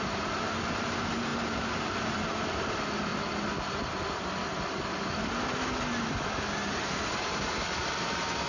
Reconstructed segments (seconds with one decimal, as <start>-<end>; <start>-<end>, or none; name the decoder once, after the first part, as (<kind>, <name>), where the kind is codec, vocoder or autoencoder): 0.0-3.1 (vocoder, BigVGAN v2); 6.9-8.5